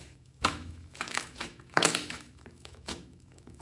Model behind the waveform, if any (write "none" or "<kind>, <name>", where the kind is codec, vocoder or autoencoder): autoencoder, DAC-VAE